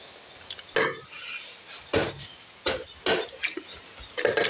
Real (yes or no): yes